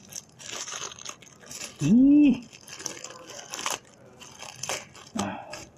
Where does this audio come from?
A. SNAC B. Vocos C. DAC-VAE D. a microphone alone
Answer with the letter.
D